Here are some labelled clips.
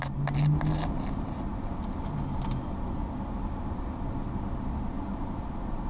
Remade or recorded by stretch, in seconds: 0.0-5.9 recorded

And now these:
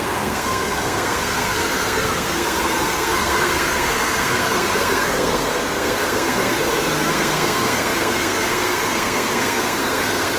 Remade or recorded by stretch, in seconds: 0.0-10.4 remade

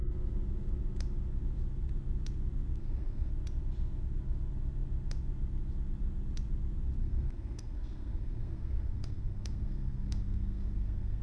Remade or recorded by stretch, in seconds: 0.0-2.8 recorded; 2.8-3.3 remade; 3.3-7.0 recorded; 7.0-11.2 remade